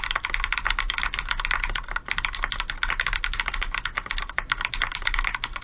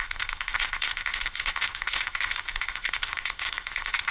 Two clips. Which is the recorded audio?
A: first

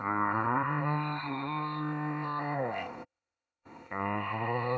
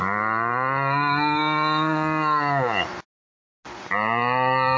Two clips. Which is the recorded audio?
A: second